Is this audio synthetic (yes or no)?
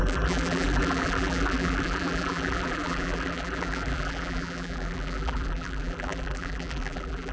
yes